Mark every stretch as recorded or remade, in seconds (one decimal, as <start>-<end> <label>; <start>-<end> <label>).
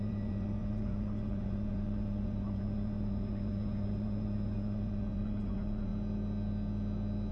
0.0-5.9 remade; 5.9-7.3 recorded